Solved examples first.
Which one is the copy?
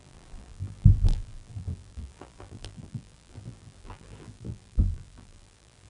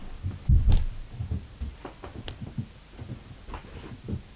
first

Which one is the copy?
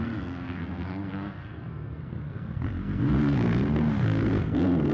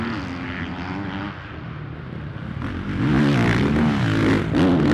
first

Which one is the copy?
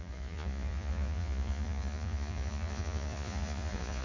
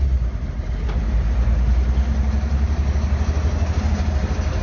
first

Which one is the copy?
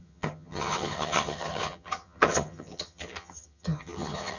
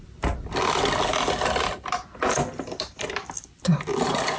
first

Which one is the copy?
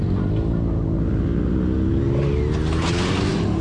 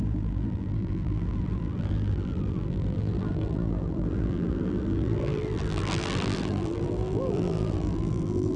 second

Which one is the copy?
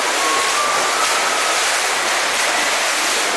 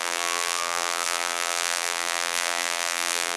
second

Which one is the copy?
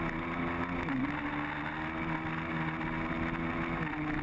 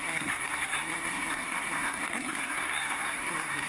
second